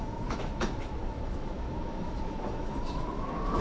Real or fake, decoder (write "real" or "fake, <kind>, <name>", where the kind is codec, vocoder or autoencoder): fake, autoencoder, DAC-VAE